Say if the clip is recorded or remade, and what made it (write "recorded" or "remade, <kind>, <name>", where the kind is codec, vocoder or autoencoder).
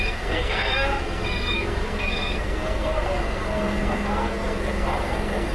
remade, codec, SNAC